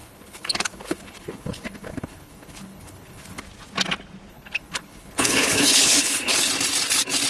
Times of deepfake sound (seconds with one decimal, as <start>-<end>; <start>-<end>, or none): 0.0-3.4; 4.3-6.5